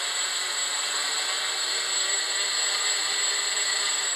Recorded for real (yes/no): yes